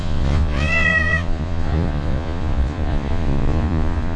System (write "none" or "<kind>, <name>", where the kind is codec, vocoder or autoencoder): vocoder, Vocos